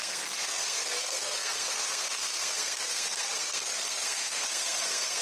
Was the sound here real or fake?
fake